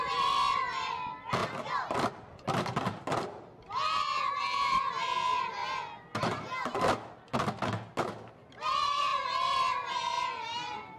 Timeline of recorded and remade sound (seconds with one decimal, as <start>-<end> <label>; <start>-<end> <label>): 0.0-1.4 remade; 1.4-4.9 recorded; 4.9-5.6 remade; 5.6-8.3 recorded; 8.3-11.0 remade